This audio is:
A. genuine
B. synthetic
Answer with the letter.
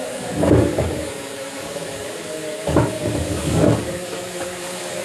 B